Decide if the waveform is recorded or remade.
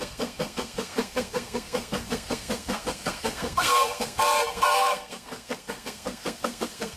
remade